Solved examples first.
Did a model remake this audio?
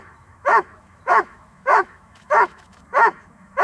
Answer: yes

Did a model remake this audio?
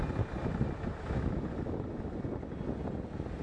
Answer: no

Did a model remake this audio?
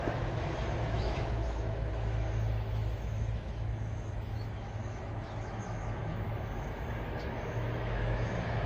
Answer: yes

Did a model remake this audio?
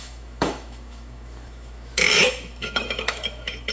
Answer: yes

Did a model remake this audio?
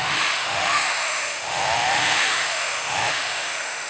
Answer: yes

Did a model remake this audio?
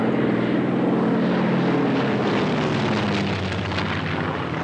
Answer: no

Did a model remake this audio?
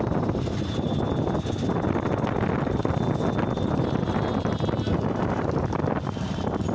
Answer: no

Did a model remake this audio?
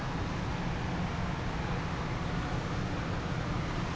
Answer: no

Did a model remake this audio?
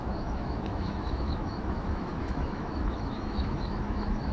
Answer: yes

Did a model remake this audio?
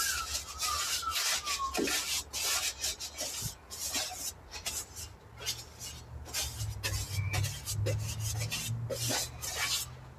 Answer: no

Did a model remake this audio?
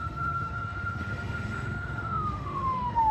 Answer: yes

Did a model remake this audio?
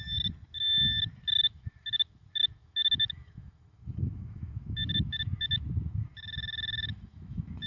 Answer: yes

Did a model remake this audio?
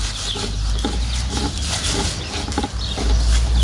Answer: no